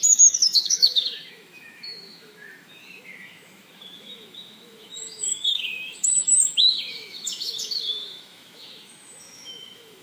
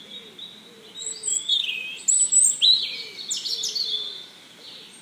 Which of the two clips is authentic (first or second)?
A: second